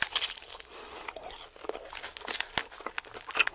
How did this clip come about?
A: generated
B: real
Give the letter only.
B